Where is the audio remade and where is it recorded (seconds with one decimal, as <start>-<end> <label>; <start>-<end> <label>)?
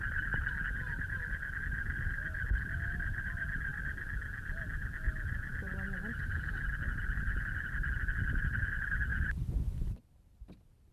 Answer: 0.0-10.9 recorded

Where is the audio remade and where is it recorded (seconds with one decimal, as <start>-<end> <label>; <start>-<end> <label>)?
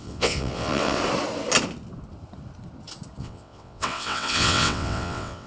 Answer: 0.0-1.0 remade; 1.0-3.2 recorded; 3.2-5.5 remade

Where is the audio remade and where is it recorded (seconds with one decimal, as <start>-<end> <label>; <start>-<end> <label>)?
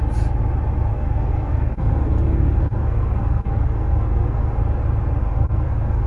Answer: 0.0-0.9 recorded; 0.9-4.6 remade; 4.6-5.2 recorded; 5.2-6.1 remade